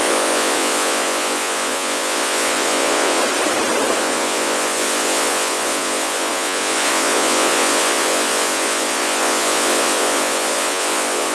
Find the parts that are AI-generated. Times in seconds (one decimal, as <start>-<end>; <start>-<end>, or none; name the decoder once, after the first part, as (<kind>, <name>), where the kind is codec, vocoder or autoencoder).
0.0-3.2 (vocoder, Vocos); 4.0-11.3